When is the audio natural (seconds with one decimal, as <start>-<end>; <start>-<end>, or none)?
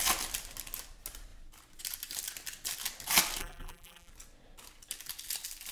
0.0-3.4; 4.1-5.7